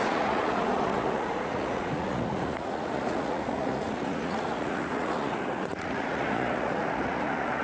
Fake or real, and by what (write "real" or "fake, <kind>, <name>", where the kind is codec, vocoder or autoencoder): fake, vocoder, Vocos